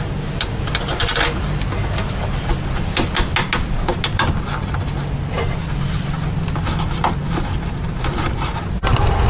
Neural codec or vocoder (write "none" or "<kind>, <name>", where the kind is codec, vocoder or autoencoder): none